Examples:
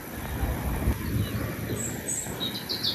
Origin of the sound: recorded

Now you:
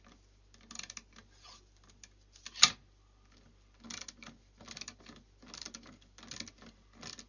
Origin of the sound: recorded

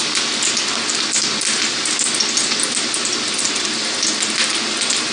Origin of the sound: recorded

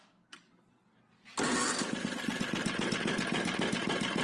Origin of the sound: recorded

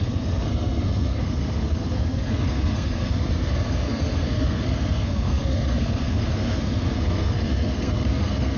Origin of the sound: remade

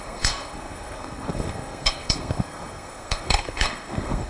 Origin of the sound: remade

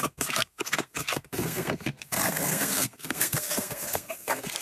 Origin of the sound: remade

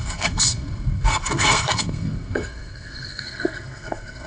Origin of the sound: remade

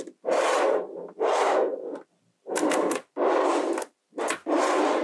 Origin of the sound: recorded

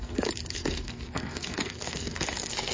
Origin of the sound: remade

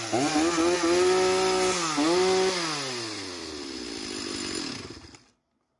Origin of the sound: recorded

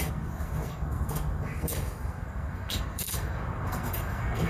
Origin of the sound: remade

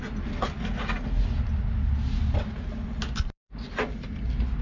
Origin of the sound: recorded